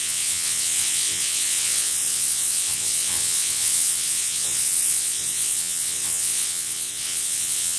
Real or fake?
fake